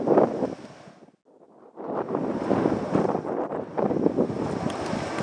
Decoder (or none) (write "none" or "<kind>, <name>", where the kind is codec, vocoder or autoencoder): none